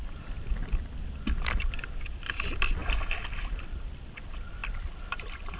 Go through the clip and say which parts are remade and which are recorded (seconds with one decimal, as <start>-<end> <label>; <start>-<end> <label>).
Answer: 0.0-0.6 remade; 0.6-2.1 recorded; 2.1-5.6 remade